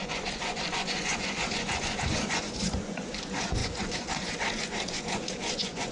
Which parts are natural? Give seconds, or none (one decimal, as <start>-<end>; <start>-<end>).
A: none